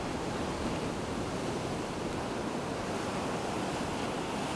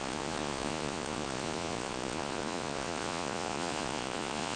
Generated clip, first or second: second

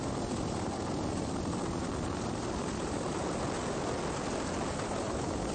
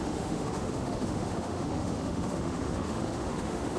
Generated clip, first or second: second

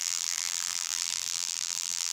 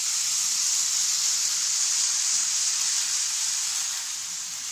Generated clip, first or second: first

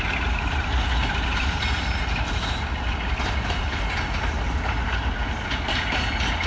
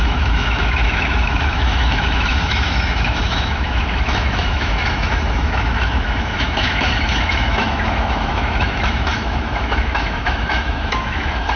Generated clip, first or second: second